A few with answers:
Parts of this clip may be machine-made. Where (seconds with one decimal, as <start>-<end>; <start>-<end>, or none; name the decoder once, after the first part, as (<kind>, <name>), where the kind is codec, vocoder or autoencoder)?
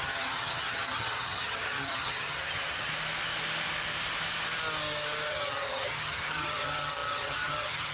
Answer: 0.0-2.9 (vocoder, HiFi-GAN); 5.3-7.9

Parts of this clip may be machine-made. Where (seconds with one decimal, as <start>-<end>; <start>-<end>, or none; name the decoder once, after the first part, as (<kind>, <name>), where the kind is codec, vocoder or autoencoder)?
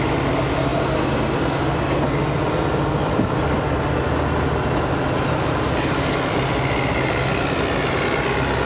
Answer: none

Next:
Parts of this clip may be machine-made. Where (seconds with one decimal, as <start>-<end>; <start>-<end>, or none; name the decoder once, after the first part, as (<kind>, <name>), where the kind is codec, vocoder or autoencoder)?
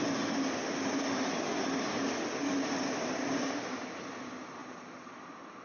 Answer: none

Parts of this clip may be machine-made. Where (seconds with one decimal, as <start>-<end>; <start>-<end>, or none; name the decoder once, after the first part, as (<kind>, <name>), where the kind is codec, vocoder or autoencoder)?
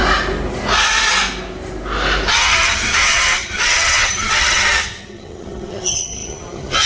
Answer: 2.3-6.9 (vocoder, HiFi-GAN)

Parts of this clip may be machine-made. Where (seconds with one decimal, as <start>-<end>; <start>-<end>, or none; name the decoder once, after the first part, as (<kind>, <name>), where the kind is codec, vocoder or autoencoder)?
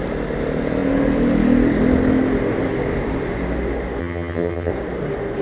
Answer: 4.0-4.7 (vocoder, HiFi-GAN)